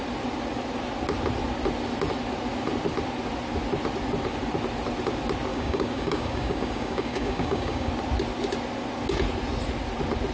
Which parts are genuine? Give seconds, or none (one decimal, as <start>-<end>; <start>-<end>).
0.0-5.5; 7.9-10.3